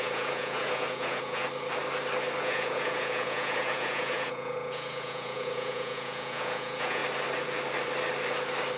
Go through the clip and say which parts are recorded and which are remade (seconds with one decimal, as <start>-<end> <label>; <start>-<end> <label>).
0.0-1.4 remade; 1.4-2.4 recorded; 2.4-7.0 remade; 7.0-8.8 recorded